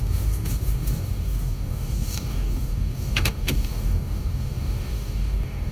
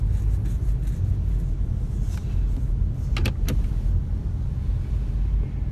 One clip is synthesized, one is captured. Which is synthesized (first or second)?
first